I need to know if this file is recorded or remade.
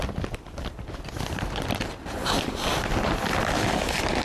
recorded